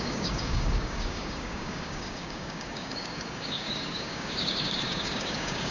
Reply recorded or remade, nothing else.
remade